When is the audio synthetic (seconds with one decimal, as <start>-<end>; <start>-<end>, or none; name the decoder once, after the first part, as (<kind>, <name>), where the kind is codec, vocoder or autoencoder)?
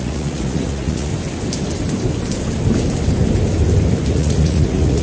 0.0-1.1 (vocoder, Vocos); 4.1-5.0